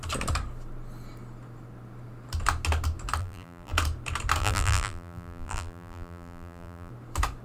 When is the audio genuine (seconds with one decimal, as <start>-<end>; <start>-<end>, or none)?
0.0-3.2; 3.7-4.4; 6.9-7.4